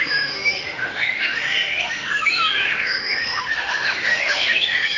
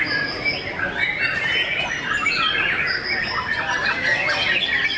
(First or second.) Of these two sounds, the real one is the second